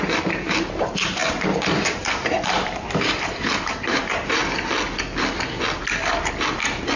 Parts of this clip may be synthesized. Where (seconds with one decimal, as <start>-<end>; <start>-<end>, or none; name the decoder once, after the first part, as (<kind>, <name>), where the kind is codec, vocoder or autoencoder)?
0.0-4.4 (vocoder, BigVGAN v2); 6.5-7.0